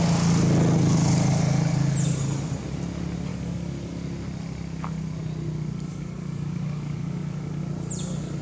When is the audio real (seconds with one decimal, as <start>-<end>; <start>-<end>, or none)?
0.0-3.3; 3.9-5.9; 7.6-8.4